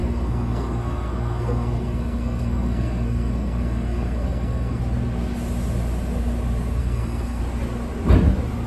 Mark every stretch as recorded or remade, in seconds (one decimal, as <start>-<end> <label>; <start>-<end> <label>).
0.0-4.8 remade; 4.8-6.8 recorded; 6.8-7.4 remade; 7.4-8.7 recorded